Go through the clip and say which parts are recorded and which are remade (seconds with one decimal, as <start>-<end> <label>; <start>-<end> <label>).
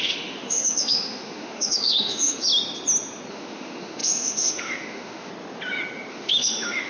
0.0-2.5 remade; 2.5-3.3 recorded; 3.3-5.3 remade; 5.3-6.1 recorded; 6.1-6.9 remade